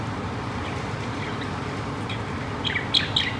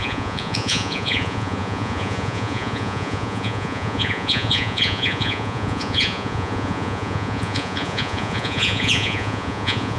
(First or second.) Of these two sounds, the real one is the first